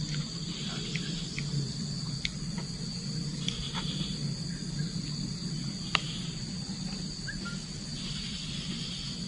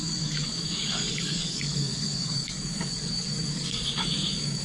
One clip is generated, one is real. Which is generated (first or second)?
second